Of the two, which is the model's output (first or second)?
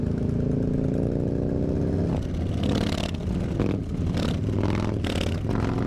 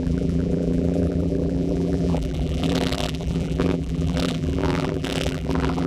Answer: second